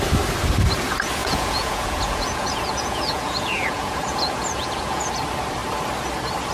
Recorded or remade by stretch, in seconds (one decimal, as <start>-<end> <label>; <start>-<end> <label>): 0.0-1.2 recorded; 1.2-5.1 remade; 5.1-6.5 recorded